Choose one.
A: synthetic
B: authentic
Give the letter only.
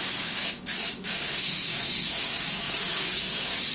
A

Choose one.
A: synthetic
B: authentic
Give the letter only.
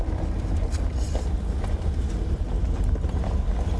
B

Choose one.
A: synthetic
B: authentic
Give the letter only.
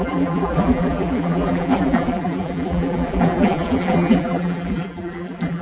A